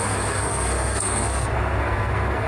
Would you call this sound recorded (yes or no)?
no